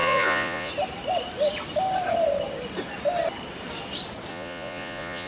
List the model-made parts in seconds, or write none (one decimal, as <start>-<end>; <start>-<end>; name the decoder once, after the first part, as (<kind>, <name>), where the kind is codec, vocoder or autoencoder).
0.0-0.7 (vocoder, Vocos); 4.3-5.3